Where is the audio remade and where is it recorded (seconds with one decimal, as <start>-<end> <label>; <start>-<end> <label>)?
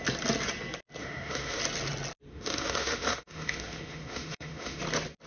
0.0-1.0 recorded; 1.0-1.6 remade; 1.6-2.3 recorded; 2.3-4.8 remade; 4.8-5.3 recorded